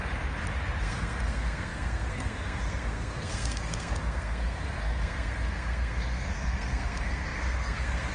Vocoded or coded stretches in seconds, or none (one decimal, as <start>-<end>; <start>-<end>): 0.8-8.1